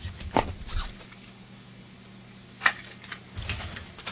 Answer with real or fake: real